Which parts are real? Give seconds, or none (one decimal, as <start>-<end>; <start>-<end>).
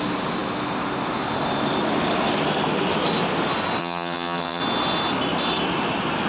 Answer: 0.0-3.8; 4.6-6.3